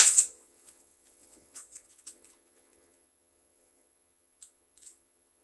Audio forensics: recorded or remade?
remade